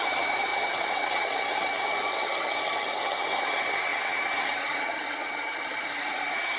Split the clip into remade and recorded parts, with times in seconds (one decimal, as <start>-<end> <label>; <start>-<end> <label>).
0.0-6.6 remade